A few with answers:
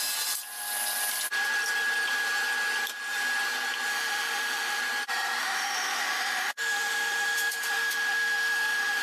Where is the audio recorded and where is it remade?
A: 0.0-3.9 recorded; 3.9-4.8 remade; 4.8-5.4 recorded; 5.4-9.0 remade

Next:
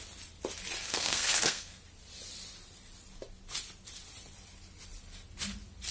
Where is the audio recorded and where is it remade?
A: 0.0-0.8 recorded; 0.8-1.8 remade; 1.8-5.9 recorded

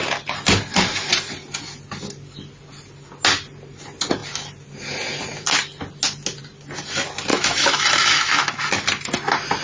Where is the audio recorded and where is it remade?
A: 0.0-7.3 recorded; 7.3-8.7 remade; 8.7-9.6 recorded